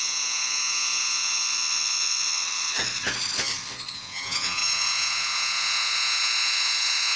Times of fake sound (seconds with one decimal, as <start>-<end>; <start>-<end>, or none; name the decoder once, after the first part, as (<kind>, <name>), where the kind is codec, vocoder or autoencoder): 0.0-1.3 (vocoder, Vocos); 4.0-7.2